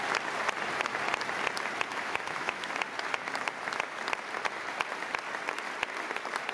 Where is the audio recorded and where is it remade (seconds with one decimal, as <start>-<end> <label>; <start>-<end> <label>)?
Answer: 0.0-1.9 recorded; 1.9-2.7 remade; 2.7-6.5 recorded